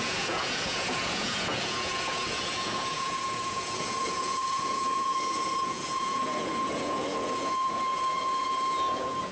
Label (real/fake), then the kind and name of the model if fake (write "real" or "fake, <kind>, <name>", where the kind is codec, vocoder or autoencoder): fake, vocoder, Vocos